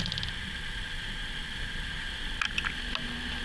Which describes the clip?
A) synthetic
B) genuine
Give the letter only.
B